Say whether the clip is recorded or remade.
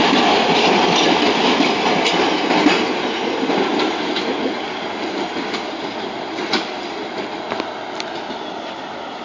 recorded